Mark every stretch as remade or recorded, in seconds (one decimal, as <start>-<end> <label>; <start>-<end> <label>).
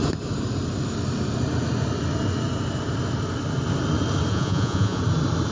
0.0-4.3 recorded; 4.3-5.0 remade; 5.0-5.5 recorded